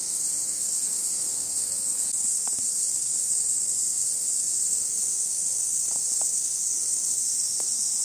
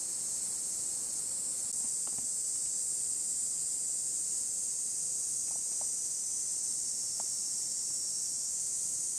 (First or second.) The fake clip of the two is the first